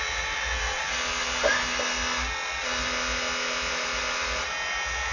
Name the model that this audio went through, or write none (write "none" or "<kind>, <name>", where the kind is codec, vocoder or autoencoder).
none